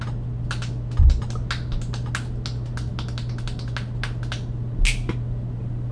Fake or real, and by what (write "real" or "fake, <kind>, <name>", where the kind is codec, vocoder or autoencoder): real